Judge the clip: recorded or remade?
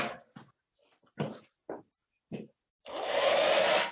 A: recorded